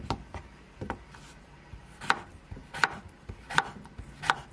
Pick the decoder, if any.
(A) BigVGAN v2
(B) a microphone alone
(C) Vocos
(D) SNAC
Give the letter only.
A